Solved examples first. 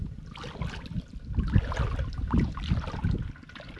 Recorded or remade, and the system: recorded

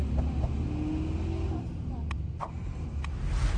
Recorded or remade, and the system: recorded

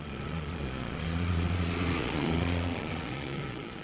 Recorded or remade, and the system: remade, vocoder, Vocos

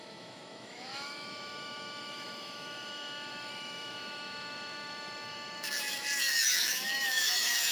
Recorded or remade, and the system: remade, autoencoder, DAC-VAE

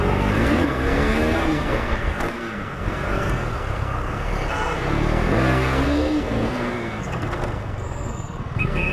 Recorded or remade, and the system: remade, codec, SNAC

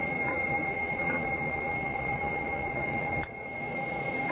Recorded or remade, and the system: remade, vocoder, Vocos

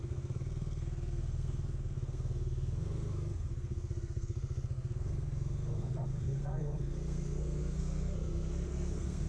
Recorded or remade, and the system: remade, codec, SNAC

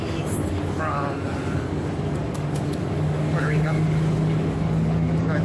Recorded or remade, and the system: remade, codec, DAC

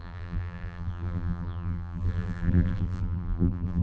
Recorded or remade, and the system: remade, vocoder, BigVGAN v2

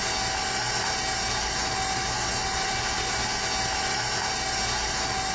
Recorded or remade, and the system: recorded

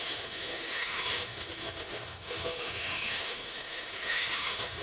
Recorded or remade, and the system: remade, autoencoder, DAC-VAE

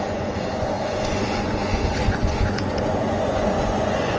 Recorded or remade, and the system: remade, vocoder, Vocos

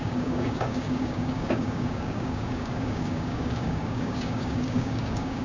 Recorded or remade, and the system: remade, codec, DAC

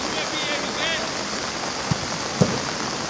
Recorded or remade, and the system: recorded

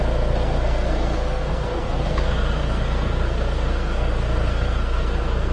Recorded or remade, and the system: remade, codec, SNAC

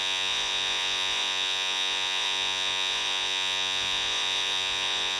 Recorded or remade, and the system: remade, vocoder, Vocos